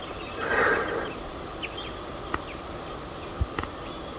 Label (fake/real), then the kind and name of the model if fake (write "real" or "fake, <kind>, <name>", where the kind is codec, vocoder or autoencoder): real